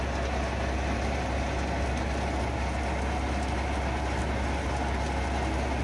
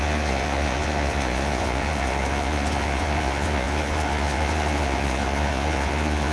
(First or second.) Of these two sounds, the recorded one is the first